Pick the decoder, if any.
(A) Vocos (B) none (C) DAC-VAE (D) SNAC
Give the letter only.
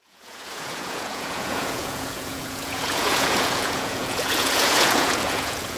A